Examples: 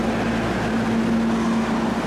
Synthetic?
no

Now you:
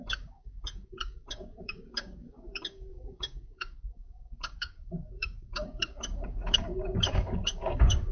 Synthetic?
yes